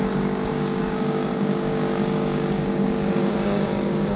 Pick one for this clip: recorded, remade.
remade